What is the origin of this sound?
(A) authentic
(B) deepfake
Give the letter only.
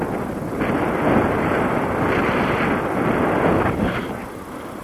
A